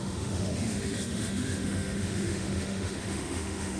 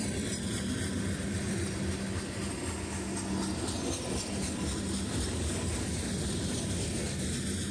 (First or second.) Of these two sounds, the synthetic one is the first